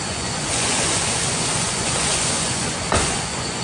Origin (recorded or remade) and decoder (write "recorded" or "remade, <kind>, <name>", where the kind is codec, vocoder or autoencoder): remade, vocoder, Vocos